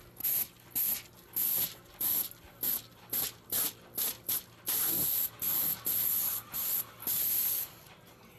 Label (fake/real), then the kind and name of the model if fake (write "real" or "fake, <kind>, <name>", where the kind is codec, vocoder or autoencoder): real